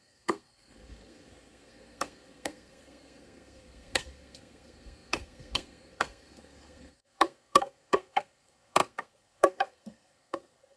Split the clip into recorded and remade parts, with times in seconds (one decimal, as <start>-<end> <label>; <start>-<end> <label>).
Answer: 0.0-10.8 remade